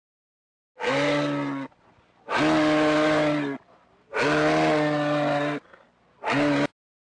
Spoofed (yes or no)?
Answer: no